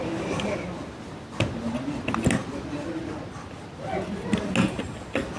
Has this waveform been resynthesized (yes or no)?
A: no